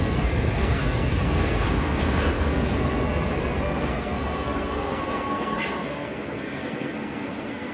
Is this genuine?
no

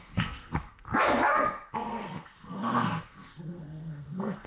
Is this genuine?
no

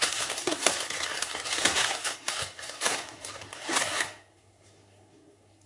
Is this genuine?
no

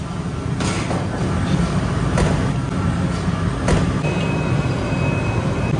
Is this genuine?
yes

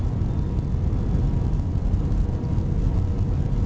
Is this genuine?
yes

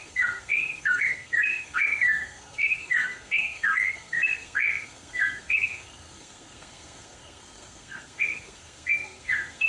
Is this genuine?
no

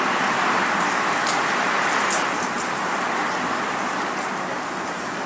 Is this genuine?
yes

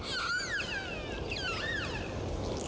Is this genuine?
yes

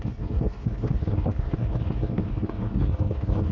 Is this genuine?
no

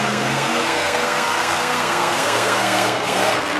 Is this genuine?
no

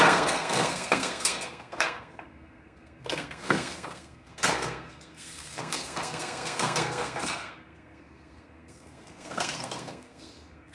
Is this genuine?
no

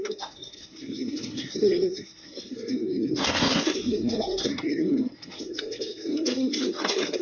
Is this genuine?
no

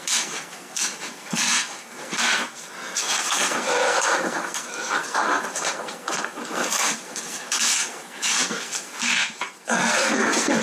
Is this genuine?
no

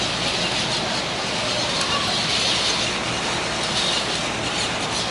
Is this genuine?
yes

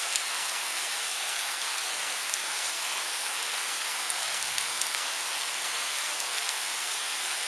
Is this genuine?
no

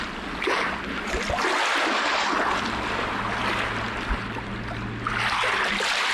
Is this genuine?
yes